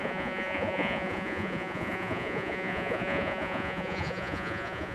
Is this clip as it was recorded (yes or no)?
no